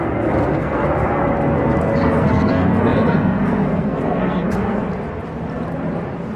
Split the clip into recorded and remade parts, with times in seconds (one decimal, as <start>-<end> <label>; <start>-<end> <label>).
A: 0.0-1.2 remade; 1.2-2.0 recorded; 2.0-4.8 remade; 4.8-6.4 recorded